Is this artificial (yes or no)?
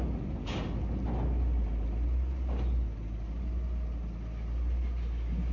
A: no